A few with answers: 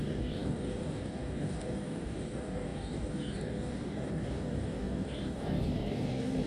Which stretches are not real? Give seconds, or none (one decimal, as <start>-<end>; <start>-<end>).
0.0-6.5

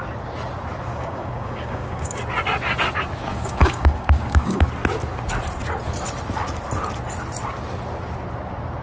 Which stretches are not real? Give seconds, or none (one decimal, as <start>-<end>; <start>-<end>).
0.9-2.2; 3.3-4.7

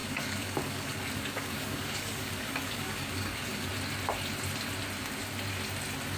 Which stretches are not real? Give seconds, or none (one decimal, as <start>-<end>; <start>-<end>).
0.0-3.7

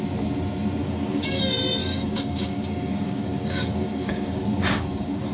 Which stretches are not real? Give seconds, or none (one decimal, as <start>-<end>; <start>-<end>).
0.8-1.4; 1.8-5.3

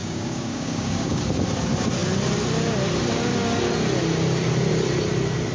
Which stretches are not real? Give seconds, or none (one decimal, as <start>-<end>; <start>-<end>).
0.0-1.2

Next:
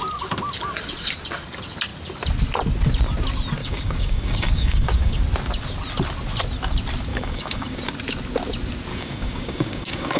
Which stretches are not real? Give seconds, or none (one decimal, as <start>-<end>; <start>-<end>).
3.6-5.2; 7.1-7.8; 8.9-10.2

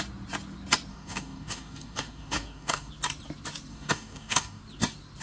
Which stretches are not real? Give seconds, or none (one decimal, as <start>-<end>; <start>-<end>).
0.9-2.9; 3.7-4.6

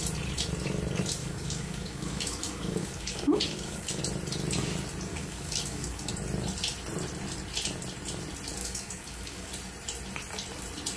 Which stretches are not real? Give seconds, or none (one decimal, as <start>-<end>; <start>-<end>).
1.2-4.0; 5.1-6.1; 8.6-9.5